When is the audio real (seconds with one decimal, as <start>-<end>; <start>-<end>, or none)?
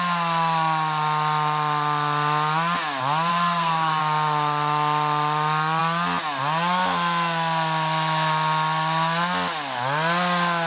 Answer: 0.0-3.3; 4.0-10.7